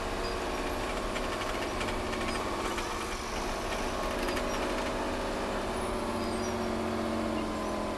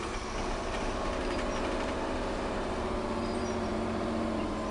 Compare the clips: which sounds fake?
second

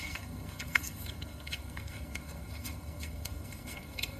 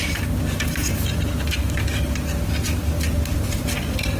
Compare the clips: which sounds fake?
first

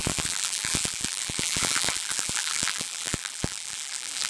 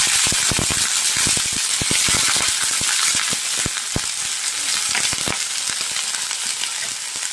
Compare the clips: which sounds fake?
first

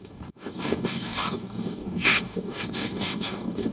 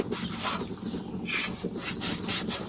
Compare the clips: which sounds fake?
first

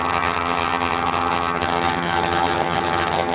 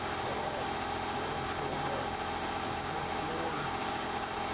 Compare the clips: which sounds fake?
first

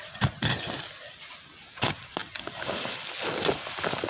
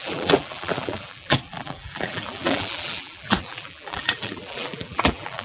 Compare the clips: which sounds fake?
second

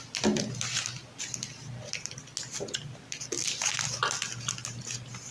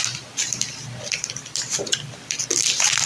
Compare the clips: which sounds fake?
second